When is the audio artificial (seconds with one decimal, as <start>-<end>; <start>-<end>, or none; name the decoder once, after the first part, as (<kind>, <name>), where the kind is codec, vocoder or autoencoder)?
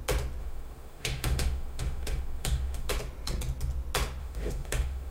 0.4-2.9 (autoencoder, DAC-VAE); 4.2-5.1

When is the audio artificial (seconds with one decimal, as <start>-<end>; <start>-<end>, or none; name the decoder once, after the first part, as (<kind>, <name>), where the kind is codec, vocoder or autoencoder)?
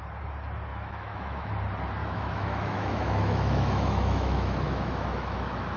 0.7-1.5 (autoencoder, DAC-VAE); 2.0-5.8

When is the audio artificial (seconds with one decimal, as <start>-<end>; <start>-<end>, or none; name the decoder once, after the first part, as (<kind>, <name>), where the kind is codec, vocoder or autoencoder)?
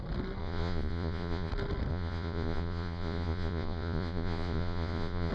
0.4-1.5 (vocoder, Vocos); 1.9-5.3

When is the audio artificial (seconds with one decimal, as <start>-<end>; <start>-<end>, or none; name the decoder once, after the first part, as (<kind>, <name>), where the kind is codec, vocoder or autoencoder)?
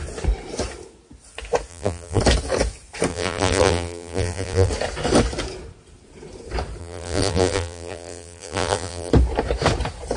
1.7-2.2 (vocoder, BigVGAN v2); 3.1-4.7; 6.8-9.1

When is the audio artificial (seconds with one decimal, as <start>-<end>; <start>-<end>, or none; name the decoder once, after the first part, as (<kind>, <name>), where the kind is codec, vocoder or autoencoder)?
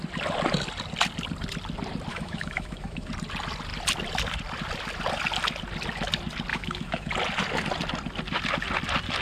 2.1-3.1 (autoencoder, DAC-VAE); 6.5-7.1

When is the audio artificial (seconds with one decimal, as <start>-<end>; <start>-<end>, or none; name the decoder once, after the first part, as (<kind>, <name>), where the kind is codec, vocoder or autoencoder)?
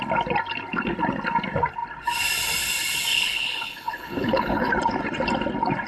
3.1-4.7 (codec, HILCodec)